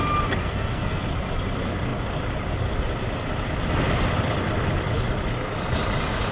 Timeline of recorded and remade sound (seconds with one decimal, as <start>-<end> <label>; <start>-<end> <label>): 0.0-0.4 recorded; 0.4-1.0 remade; 1.0-6.3 recorded